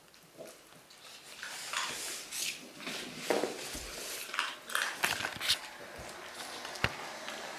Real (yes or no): yes